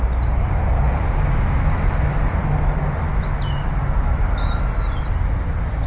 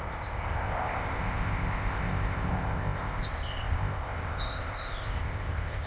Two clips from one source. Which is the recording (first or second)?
first